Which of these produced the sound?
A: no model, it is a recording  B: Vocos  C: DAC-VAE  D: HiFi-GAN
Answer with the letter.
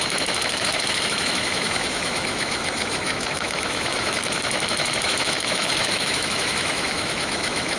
C